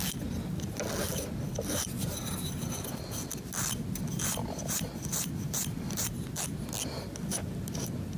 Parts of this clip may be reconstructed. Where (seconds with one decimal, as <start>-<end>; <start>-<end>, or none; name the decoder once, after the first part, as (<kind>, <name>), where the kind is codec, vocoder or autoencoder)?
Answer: none